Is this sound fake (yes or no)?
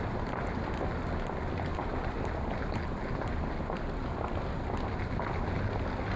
no